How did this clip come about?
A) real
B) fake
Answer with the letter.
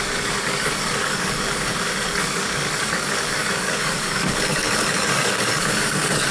B